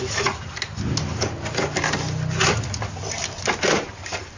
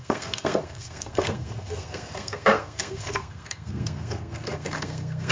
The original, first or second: first